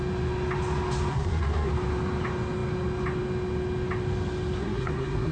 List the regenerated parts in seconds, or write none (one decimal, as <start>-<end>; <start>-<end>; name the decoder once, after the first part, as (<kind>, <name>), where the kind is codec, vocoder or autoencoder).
1.1-1.7 (codec, SNAC); 4.6-5.3